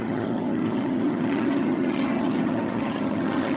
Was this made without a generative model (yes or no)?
no